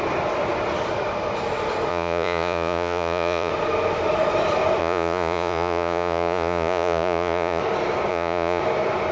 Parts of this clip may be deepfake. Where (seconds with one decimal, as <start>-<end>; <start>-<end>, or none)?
1.9-3.5; 4.8-7.6; 8.1-8.6